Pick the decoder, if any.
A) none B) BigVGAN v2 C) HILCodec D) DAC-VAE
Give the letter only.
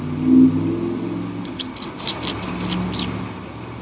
A